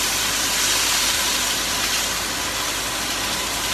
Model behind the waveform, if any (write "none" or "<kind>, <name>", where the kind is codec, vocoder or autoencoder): none